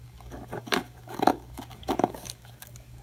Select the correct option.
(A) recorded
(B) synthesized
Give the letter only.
B